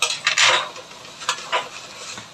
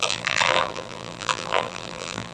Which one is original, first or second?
first